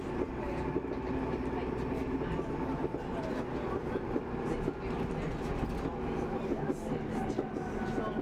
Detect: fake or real real